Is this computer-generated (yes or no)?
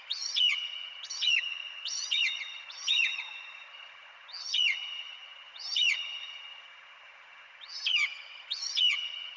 yes